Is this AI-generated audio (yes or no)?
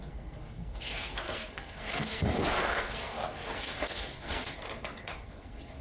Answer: yes